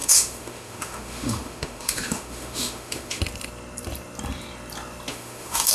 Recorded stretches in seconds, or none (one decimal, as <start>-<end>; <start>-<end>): 3.2-5.1